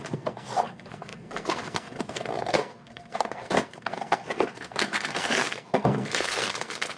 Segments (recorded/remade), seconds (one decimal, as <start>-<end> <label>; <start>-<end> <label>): 0.0-7.0 remade